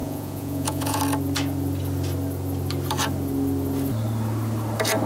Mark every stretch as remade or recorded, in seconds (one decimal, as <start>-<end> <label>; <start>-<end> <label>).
0.0-1.0 remade; 1.0-5.1 recorded